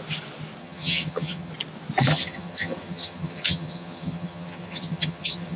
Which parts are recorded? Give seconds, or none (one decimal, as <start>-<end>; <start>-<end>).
0.0-0.6; 1.5-2.1